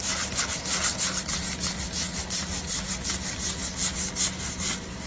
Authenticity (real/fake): real